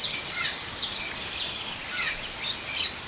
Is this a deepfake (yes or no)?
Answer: no